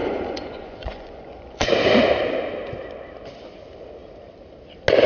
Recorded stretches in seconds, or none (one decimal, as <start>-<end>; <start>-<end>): 1.7-5.1